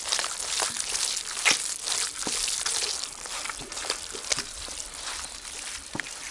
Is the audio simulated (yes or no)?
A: no